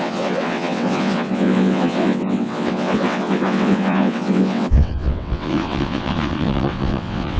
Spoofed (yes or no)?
yes